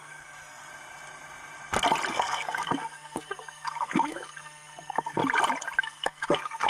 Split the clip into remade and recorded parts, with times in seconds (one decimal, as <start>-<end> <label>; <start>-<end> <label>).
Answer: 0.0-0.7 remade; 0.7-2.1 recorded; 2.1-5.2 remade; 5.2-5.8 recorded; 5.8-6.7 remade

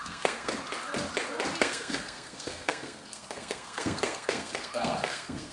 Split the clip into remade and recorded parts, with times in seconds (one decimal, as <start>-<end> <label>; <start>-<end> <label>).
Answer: 0.0-0.5 remade; 0.5-1.6 recorded; 1.6-5.5 remade

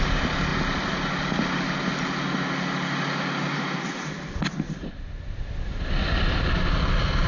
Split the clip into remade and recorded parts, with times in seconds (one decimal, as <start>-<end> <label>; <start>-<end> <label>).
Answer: 0.0-7.3 recorded

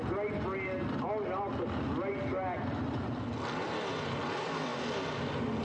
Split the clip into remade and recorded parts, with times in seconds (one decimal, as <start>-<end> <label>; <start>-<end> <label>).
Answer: 0.0-5.6 recorded

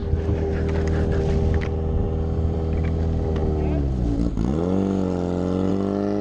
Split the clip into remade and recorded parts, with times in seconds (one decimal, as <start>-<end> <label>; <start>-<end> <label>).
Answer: 0.0-6.2 recorded